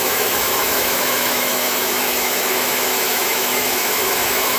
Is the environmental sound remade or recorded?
remade